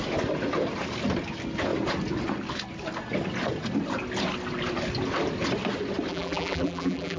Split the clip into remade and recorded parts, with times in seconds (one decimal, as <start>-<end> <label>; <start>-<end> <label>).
0.0-6.1 recorded; 6.1-7.2 remade